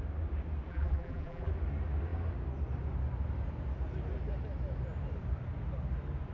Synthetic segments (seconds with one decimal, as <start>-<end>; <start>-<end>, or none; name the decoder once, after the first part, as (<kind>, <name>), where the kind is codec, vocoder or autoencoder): 0.7-1.5 (vocoder, BigVGAN v2)

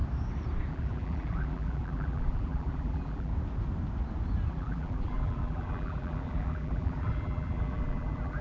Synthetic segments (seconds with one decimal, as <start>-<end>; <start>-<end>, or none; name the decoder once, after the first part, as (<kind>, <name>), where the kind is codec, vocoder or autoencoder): 0.7-3.3 (vocoder, BigVGAN v2); 4.5-8.4

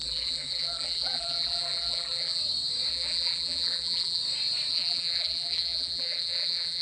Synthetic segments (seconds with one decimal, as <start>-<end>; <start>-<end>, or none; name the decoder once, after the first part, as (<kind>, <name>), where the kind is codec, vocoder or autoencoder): 0.0-2.4 (vocoder, BigVGAN v2); 2.9-4.2; 4.7-6.8

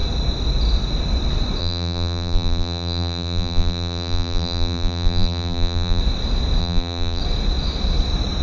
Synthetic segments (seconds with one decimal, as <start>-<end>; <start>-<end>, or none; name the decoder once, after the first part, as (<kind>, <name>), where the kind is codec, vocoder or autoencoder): 1.6-6.0 (vocoder, BigVGAN v2); 6.6-7.2

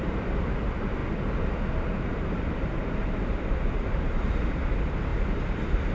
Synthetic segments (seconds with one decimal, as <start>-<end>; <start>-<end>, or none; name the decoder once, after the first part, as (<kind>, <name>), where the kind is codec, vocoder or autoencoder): 0.0-1.0 (vocoder, BigVGAN v2); 1.8-5.9

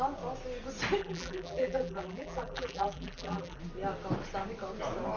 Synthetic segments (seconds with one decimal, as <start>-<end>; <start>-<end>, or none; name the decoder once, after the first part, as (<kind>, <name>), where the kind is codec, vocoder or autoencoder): 1.0-3.6 (vocoder, BigVGAN v2)